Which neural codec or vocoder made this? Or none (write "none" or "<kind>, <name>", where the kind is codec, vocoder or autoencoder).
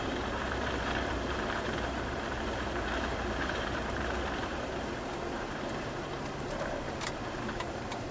vocoder, BigVGAN v2